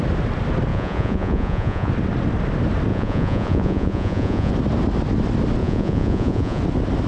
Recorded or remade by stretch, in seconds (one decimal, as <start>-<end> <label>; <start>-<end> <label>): 0.0-0.7 recorded; 0.7-1.9 remade; 1.9-2.9 recorded; 2.9-4.5 remade; 4.5-5.6 recorded; 5.6-6.6 remade; 6.6-7.1 recorded